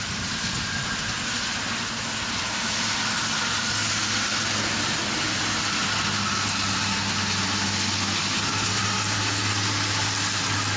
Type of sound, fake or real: real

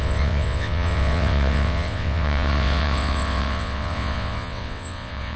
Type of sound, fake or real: fake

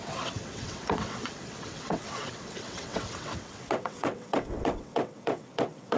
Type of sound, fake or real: fake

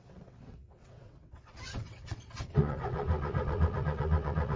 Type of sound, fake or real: fake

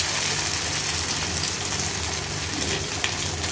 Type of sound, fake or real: real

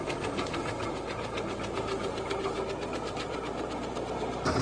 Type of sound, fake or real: real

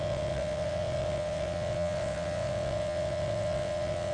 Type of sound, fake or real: fake